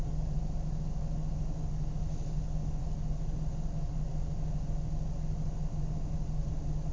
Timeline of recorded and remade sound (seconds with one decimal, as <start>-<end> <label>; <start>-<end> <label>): 0.0-6.9 recorded